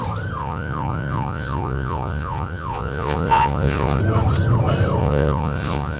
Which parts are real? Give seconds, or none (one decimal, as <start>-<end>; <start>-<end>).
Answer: 0.0-0.4; 4.0-5.0